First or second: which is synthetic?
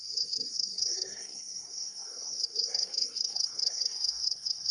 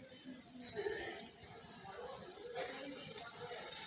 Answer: first